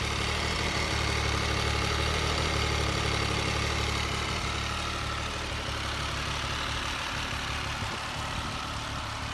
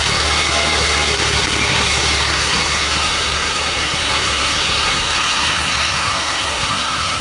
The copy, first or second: second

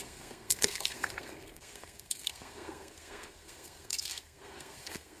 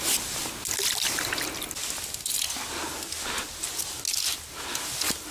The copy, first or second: first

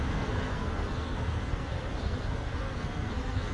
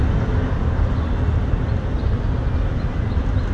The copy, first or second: first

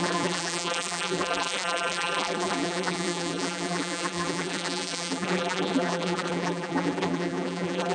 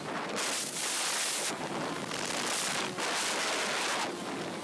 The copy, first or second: first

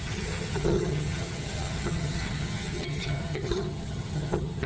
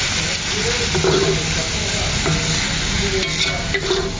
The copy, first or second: first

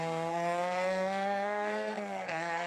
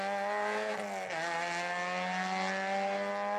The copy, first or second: first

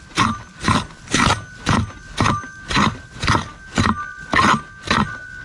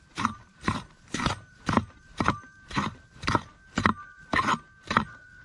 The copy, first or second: second